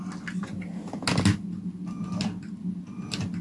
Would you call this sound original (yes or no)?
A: yes